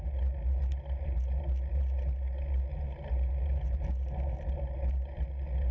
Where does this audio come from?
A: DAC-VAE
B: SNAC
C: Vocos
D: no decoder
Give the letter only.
D